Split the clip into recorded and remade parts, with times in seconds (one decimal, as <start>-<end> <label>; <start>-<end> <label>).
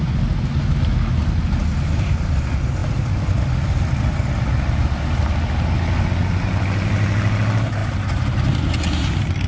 0.0-9.5 recorded